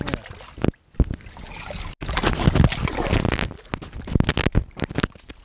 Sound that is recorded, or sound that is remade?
recorded